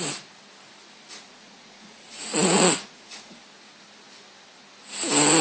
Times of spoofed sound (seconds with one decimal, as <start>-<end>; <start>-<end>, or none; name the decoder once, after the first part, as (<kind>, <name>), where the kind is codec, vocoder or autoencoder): 1.3-3.4 (vocoder, Vocos)